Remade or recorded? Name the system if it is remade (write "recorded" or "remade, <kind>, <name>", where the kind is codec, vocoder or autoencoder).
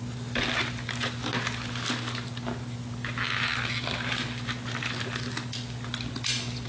recorded